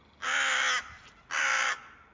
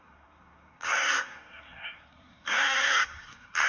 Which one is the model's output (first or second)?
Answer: second